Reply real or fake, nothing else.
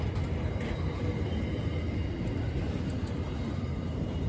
real